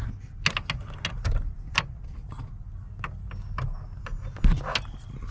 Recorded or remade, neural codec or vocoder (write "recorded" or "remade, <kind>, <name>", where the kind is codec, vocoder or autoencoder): recorded